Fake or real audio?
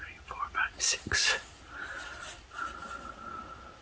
real